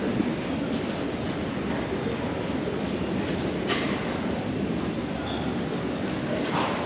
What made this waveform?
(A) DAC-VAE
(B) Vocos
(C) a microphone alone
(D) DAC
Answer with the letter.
C